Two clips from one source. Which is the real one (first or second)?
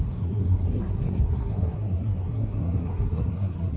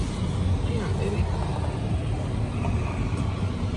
second